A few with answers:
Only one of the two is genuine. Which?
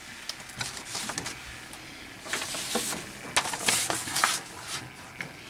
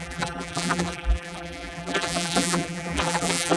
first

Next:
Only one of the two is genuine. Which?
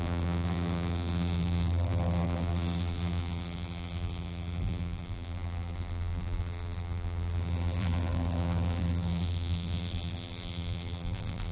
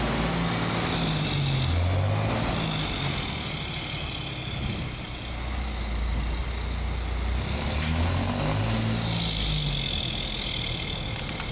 second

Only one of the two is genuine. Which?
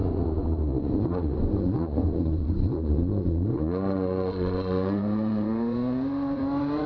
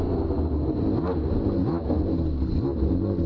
second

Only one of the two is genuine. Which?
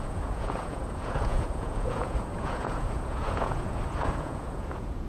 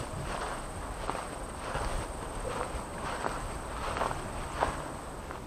second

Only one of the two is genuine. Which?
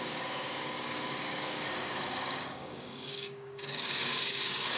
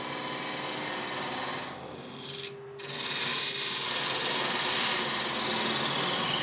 second